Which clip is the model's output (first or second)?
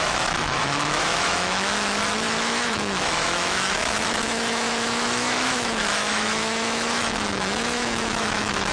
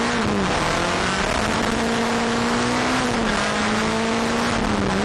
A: first